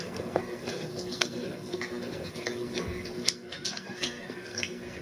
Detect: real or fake fake